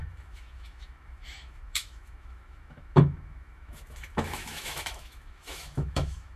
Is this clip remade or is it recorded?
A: remade